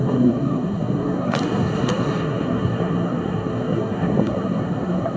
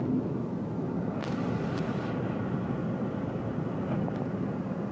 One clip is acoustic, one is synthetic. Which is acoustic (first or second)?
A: second